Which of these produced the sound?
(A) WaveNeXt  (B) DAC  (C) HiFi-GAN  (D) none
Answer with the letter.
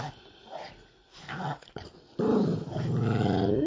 D